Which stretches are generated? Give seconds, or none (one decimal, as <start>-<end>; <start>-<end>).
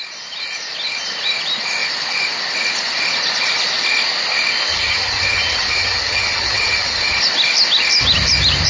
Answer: 4.7-7.2